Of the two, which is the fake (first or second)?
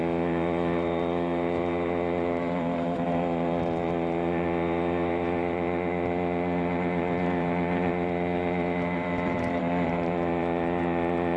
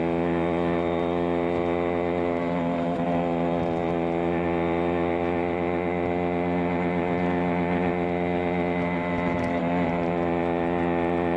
first